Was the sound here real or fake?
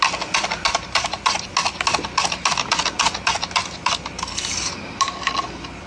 real